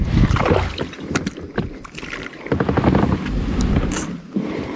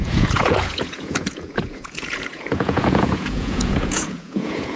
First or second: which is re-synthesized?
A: second